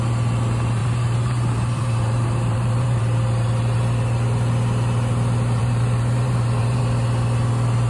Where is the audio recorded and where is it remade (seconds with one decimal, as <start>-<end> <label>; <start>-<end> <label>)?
0.0-0.8 recorded; 0.8-3.0 remade; 3.0-5.6 recorded; 5.6-6.8 remade; 6.8-7.9 recorded